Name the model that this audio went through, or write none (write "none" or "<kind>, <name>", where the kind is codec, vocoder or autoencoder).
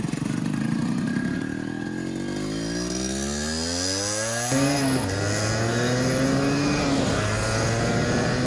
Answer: none